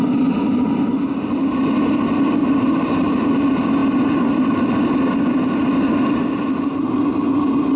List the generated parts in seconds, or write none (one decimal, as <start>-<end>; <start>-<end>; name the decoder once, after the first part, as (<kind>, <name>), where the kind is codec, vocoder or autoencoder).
2.4-3.4 (vocoder, BigVGAN v2)

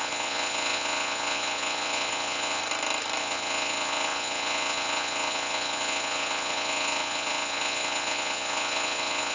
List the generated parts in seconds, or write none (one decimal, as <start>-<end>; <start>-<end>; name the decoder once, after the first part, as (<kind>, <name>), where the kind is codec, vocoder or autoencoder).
0.0-2.6 (vocoder, Vocos); 3.2-9.3